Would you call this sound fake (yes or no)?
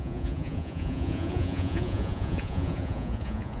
yes